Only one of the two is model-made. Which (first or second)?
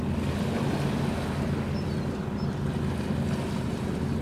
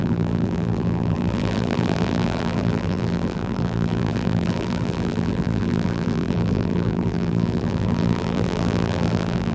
second